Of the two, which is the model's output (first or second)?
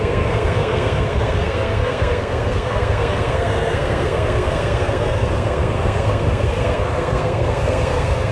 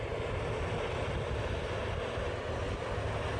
first